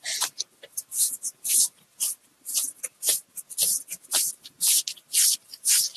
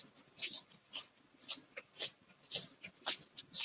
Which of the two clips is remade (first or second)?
second